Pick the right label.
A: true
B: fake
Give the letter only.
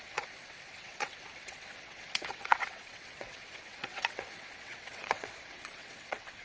B